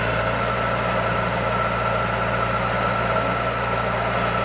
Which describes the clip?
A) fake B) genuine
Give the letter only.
B